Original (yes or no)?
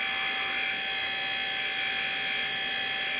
yes